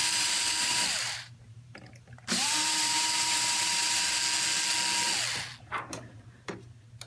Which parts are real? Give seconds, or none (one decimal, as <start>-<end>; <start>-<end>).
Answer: 4.2-7.1